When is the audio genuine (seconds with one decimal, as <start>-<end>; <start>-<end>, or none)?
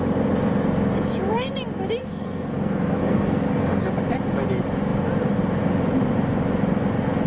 0.0-2.0; 3.9-7.3